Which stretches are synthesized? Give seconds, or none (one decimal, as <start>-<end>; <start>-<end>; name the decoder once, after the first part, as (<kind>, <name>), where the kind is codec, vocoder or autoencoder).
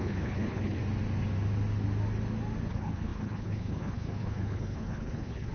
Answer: 0.0-0.8 (codec, HILCodec); 2.7-5.5